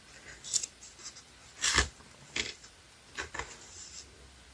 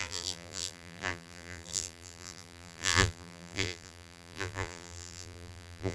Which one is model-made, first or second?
second